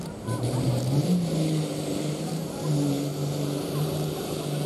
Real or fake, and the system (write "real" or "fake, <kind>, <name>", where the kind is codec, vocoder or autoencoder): fake, vocoder, BigVGAN v2